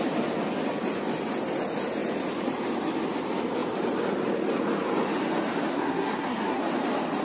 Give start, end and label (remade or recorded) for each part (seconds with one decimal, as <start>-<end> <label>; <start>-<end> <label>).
0.0-5.7 recorded; 5.7-6.6 remade; 6.6-7.2 recorded